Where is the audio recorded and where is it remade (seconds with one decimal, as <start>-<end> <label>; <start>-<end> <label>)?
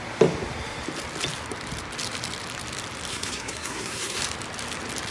0.0-3.1 recorded; 3.1-4.2 remade; 4.2-5.1 recorded